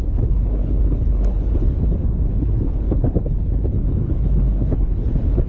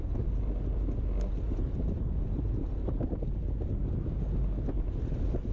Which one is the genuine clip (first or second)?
second